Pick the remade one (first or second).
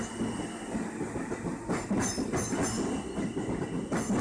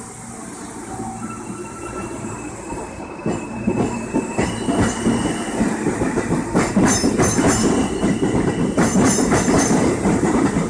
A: second